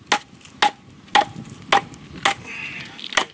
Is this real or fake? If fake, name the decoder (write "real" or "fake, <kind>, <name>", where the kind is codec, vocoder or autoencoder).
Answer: real